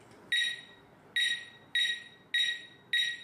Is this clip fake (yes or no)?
no